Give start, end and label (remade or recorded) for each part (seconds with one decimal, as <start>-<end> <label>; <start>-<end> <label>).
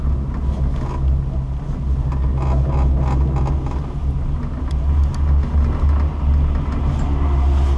0.0-7.8 recorded